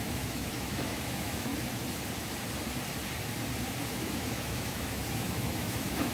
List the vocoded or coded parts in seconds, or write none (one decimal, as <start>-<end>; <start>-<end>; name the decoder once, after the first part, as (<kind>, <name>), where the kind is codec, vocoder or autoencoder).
0.0-1.5 (autoencoder, DAC-VAE); 3.9-6.1